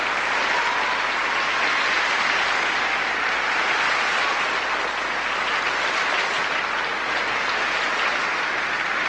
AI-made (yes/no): no